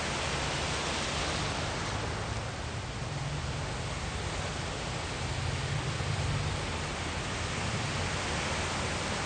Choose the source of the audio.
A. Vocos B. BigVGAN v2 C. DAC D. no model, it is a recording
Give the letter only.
D